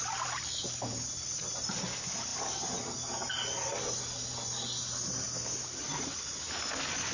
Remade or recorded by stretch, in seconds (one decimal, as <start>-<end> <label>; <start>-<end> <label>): 0.0-5.8 recorded; 5.8-6.5 remade; 6.5-7.1 recorded